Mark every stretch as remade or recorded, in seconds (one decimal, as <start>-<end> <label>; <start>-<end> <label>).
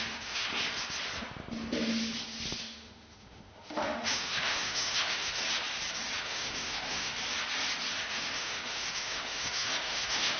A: 0.0-0.5 remade; 0.5-2.6 recorded; 2.6-5.4 remade; 5.4-6.2 recorded; 6.2-7.2 remade; 7.2-8.1 recorded; 8.1-10.4 remade